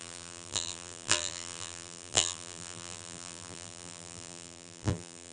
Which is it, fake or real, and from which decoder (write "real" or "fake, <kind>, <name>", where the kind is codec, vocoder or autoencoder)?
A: fake, vocoder, BigVGAN v2